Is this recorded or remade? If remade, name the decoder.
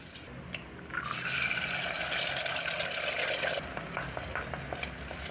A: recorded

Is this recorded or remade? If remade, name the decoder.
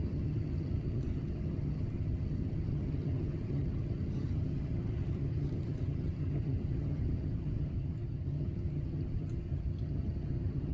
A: remade, vocoder, HiFi-GAN